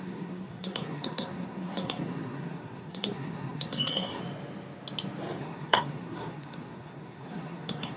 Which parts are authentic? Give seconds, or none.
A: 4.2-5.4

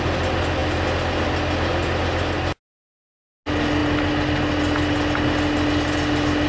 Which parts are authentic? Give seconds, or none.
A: 0.0-6.5

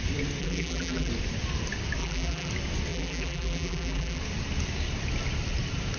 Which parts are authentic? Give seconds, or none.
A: 0.0-0.4; 1.1-2.0; 2.5-2.9; 4.2-6.0

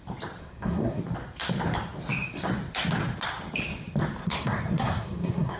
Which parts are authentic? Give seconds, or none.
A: 0.0-0.4; 1.0-4.2

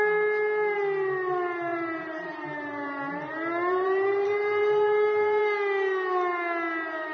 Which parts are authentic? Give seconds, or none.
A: 0.0-1.7; 5.4-7.1